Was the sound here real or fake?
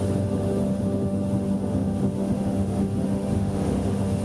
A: fake